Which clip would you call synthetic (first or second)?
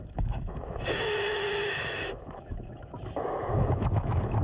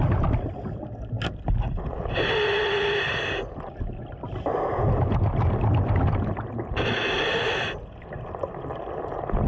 first